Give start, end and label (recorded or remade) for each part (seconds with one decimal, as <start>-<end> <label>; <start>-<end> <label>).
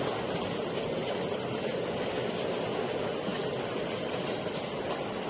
0.0-5.3 recorded